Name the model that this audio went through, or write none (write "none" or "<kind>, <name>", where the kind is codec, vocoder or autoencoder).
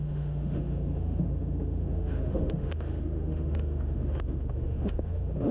autoencoder, DAC-VAE